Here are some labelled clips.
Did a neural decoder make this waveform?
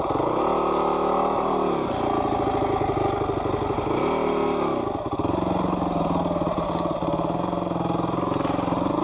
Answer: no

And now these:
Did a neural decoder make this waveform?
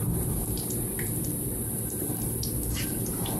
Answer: yes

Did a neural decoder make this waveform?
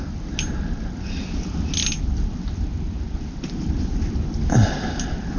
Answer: no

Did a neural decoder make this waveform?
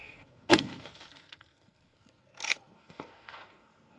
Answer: yes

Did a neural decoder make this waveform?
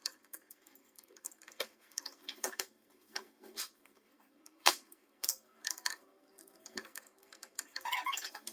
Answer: yes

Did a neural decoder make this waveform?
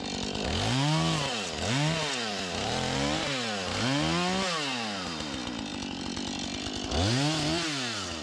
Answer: no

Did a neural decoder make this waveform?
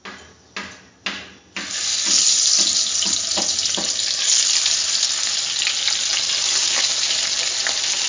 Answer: no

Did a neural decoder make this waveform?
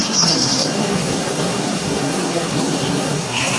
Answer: yes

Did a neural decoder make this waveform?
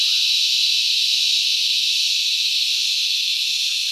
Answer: yes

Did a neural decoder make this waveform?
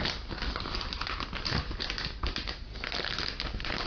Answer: no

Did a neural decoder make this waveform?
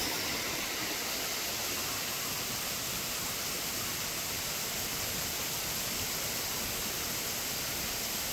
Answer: no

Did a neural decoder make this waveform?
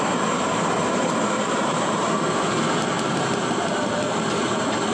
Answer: no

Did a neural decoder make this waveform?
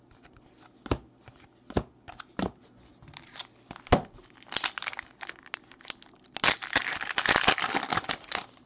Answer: no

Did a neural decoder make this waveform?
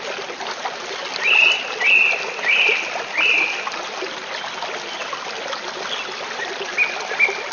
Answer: no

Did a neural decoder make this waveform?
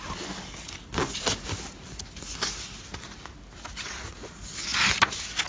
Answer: no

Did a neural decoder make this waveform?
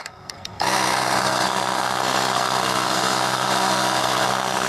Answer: yes